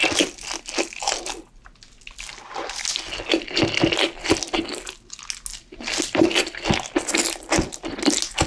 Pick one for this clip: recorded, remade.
recorded